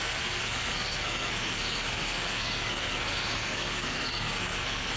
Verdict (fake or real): fake